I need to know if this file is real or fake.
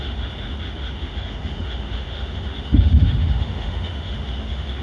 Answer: fake